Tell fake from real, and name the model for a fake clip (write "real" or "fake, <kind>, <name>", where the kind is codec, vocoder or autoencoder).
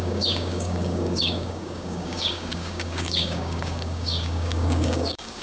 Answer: fake, codec, DAC